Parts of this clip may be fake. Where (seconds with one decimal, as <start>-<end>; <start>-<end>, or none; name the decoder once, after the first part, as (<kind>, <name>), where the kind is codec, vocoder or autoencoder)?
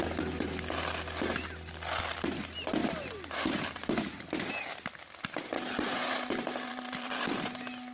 2.8-6.3 (vocoder, BigVGAN v2); 6.7-7.5